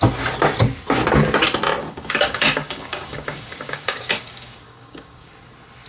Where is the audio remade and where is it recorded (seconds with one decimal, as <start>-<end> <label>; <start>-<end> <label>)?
0.0-1.8 recorded; 1.8-5.3 remade; 5.3-5.9 recorded